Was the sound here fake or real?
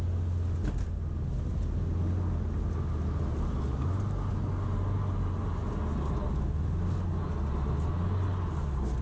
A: real